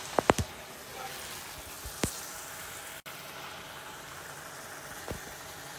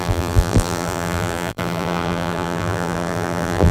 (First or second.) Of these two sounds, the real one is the first